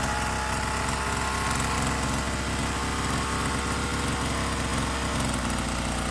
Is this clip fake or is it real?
real